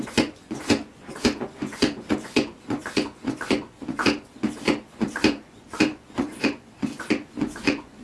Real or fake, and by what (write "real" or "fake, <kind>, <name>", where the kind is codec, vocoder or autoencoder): fake, vocoder, Vocos